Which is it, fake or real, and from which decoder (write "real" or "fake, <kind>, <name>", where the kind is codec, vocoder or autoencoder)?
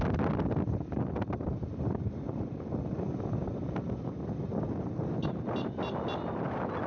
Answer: real